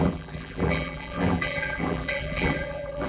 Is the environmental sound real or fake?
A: fake